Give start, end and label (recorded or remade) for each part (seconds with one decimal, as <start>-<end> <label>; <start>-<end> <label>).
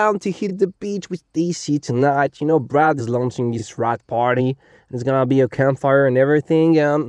0.0-0.5 recorded; 0.5-3.0 remade; 3.0-3.6 recorded; 3.6-4.4 remade; 4.4-7.1 recorded